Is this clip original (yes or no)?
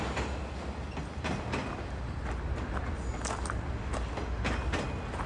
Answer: yes